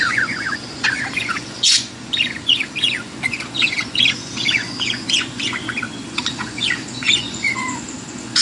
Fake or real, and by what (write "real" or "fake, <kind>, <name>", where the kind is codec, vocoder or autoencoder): fake, vocoder, Vocos